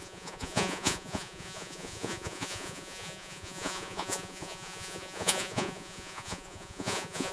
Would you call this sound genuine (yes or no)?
no